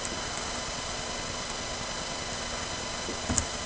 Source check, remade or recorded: recorded